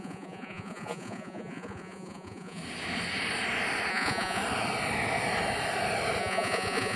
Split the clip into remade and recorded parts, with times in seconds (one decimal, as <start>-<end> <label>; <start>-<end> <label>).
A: 0.0-2.6 remade; 2.6-3.9 recorded; 3.9-4.4 remade; 4.4-6.2 recorded; 6.2-7.0 remade